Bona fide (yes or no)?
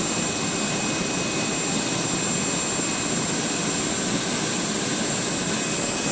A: yes